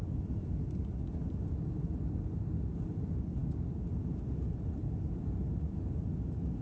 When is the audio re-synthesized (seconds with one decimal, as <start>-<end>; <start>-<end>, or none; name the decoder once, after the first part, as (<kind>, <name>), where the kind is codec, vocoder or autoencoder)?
none